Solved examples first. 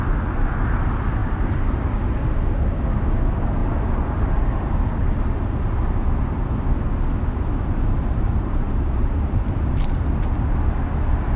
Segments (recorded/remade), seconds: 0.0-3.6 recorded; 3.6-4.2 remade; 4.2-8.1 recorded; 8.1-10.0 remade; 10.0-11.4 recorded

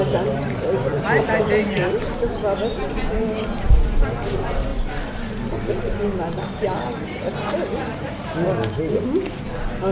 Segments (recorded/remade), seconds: 0.0-9.9 recorded

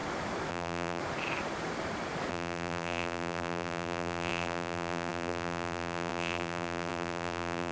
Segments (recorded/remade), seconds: 0.0-0.5 recorded; 0.5-1.0 remade; 1.0-2.3 recorded; 2.3-7.7 remade

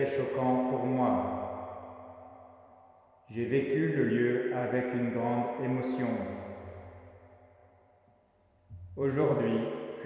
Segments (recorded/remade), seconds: 0.0-2.3 recorded; 2.3-4.1 remade; 4.1-7.6 recorded; 7.6-9.4 remade; 9.4-10.1 recorded

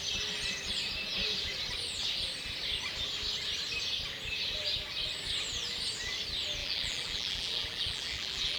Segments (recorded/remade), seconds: 0.0-6.6 recorded; 6.6-8.6 remade

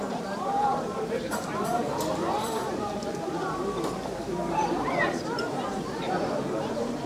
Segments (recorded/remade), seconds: 0.0-7.1 remade

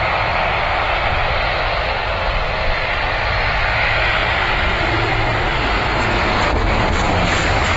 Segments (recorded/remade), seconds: 0.0-7.8 recorded

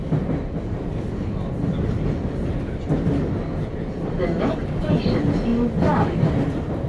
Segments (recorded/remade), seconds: 0.0-6.9 recorded